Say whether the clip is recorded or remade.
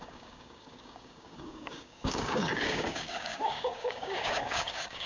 remade